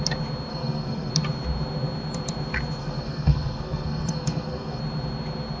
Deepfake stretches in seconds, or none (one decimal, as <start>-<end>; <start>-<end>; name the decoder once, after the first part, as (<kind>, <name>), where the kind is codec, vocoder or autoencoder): 0.5-1.1 (codec, SNAC); 2.8-4.8